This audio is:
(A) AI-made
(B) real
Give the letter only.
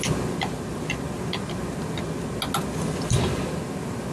B